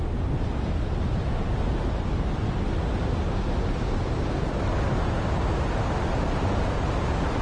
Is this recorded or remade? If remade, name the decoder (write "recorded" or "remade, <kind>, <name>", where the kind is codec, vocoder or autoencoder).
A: recorded